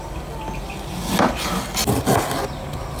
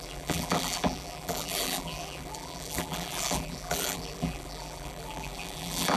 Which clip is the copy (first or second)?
second